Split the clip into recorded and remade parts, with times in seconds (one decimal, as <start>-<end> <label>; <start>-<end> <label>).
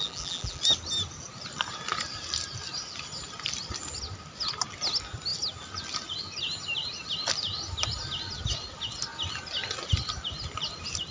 0.0-0.6 remade; 0.6-11.1 recorded